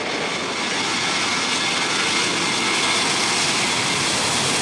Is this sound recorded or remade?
recorded